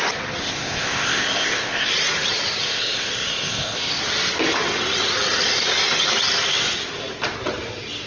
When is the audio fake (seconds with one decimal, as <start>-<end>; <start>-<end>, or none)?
0.4-1.9; 2.6-4.0